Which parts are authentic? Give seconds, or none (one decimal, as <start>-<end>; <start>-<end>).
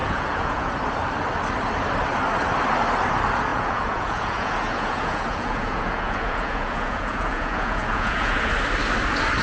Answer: 0.7-3.5; 8.5-9.4